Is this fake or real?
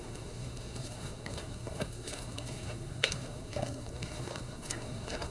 fake